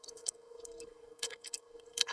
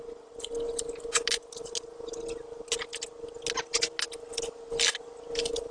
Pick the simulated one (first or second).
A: first